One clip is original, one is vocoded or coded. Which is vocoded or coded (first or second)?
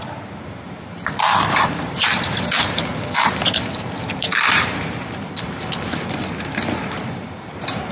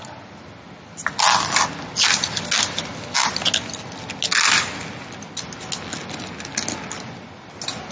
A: first